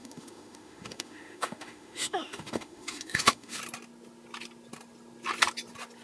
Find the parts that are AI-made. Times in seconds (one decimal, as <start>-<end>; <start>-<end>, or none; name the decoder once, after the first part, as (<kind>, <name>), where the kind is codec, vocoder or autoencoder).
0.0-3.6 (autoencoder, DAC-VAE)